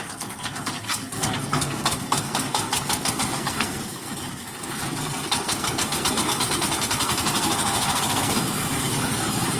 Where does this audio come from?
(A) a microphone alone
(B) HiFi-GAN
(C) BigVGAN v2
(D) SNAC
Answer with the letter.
D